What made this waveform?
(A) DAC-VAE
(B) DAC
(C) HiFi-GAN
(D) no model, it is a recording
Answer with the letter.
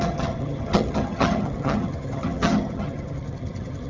C